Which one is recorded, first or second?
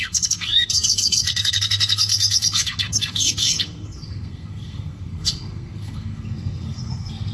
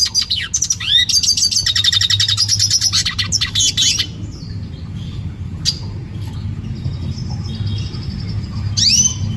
second